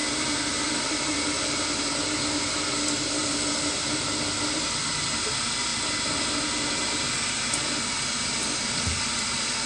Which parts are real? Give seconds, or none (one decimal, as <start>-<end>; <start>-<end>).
1.8-3.2; 5.1-5.7